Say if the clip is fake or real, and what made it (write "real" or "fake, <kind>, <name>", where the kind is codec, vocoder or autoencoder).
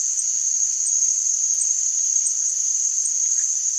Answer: real